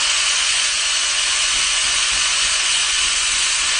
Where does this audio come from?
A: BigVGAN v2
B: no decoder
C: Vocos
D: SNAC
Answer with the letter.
C